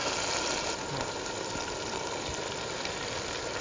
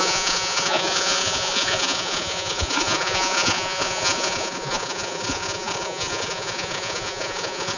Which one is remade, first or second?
second